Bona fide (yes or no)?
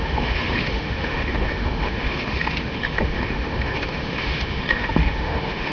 no